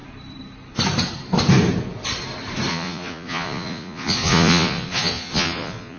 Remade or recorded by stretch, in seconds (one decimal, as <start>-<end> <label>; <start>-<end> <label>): 0.0-2.7 recorded; 2.7-6.0 remade